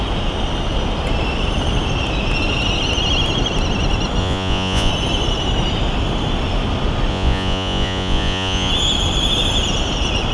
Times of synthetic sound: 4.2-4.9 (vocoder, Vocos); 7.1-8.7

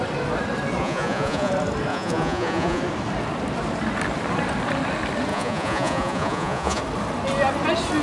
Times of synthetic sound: 0.8-1.5 (vocoder, Vocos); 1.9-2.8; 5.3-6.8

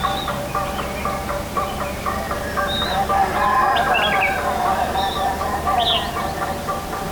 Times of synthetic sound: none

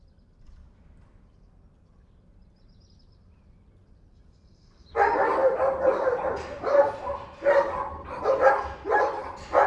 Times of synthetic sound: none